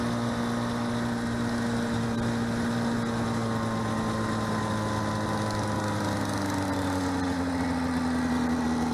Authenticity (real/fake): real